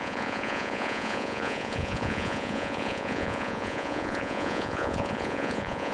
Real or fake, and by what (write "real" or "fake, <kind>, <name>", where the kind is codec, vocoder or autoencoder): fake, vocoder, Vocos